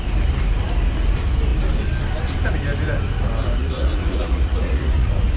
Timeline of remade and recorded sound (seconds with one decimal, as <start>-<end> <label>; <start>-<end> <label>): 0.0-3.6 recorded; 3.6-5.4 remade